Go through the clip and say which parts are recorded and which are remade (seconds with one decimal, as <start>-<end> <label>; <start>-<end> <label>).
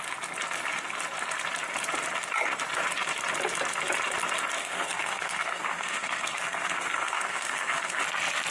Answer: 0.0-4.6 recorded; 4.6-8.0 remade; 8.0-8.5 recorded